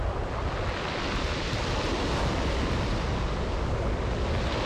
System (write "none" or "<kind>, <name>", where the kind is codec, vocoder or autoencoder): none